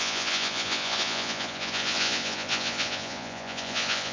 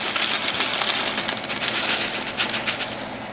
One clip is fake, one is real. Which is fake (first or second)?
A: first